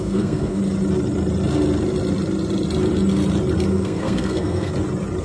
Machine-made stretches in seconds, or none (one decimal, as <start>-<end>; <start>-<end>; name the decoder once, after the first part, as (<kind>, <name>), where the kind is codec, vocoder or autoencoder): 0.0-0.6 (codec, SNAC); 3.7-4.7